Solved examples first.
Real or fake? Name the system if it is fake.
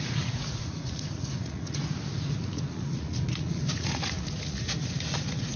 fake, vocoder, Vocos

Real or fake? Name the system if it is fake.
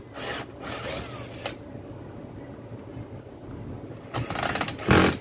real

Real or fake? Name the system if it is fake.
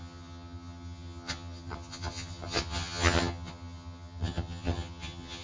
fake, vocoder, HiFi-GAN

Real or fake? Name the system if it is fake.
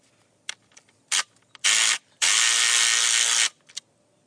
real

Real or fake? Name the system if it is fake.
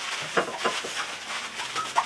real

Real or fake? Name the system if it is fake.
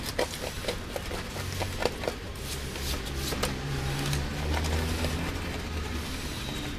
real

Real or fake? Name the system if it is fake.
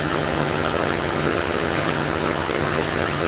fake, vocoder, HiFi-GAN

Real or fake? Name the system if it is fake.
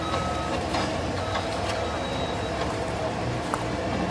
fake, vocoder, BigVGAN v2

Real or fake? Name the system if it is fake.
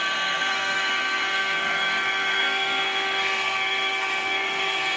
fake, codec, SNAC